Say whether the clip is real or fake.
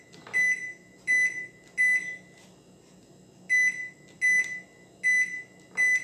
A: real